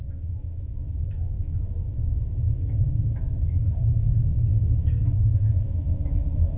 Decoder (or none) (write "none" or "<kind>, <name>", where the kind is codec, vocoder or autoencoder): autoencoder, DAC-VAE